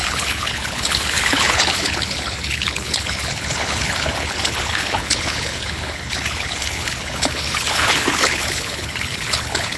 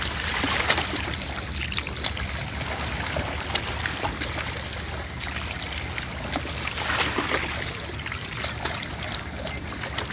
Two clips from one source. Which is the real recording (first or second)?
second